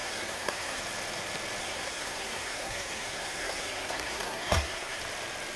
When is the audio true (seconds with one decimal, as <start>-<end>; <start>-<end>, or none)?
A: 0.8-1.6; 5.0-5.6